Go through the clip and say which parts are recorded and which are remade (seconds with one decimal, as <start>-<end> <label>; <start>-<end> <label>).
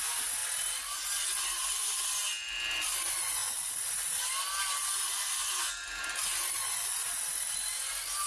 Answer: 0.0-8.3 recorded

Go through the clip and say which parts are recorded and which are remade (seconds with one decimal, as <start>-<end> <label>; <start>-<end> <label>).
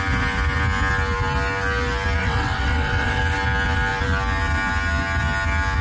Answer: 0.0-2.2 recorded; 2.2-3.2 remade; 3.2-5.8 recorded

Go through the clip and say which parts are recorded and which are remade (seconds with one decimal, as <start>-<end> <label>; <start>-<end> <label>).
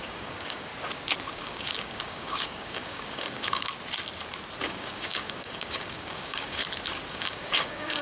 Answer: 0.0-0.7 remade; 0.7-1.3 recorded; 1.3-3.7 remade; 3.7-4.6 recorded; 4.6-6.6 remade; 6.6-7.1 recorded; 7.1-8.0 remade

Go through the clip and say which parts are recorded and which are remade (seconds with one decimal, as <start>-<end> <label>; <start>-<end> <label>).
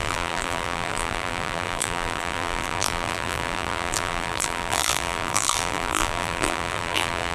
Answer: 0.0-7.3 remade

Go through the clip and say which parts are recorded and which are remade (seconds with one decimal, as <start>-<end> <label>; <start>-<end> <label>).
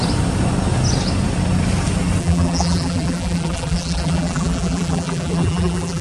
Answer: 0.0-2.2 recorded; 2.2-6.0 remade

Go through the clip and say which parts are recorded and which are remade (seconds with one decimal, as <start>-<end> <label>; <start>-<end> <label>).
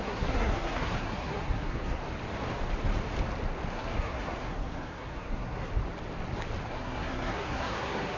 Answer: 0.0-2.0 remade; 2.0-3.7 recorded; 3.7-5.7 remade; 5.7-6.7 recorded; 6.7-8.2 remade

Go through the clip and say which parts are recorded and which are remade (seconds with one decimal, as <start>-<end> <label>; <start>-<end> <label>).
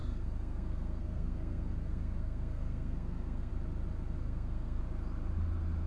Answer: 0.0-3.5 remade; 3.5-4.2 recorded; 4.2-4.8 remade; 4.8-5.9 recorded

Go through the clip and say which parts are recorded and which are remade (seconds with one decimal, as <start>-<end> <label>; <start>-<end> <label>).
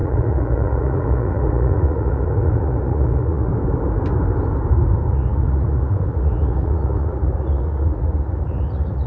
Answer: 0.0-3.5 remade; 3.5-5.1 recorded; 5.1-9.1 remade